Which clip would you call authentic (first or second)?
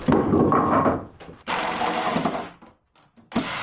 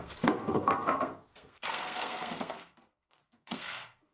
first